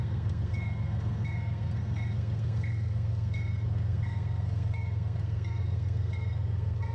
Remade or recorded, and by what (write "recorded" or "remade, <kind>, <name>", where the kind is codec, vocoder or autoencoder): remade, codec, SNAC